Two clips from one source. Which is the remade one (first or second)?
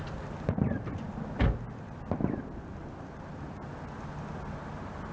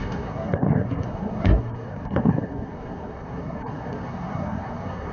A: second